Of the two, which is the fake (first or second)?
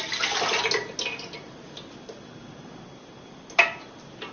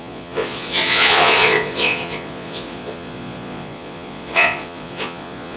second